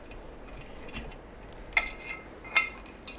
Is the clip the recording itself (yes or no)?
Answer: yes